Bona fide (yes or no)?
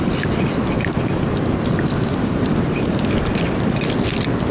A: yes